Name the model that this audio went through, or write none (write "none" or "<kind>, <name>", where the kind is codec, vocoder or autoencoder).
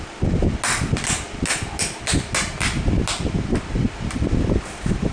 none